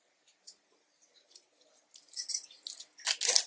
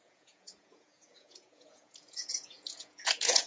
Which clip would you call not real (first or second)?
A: second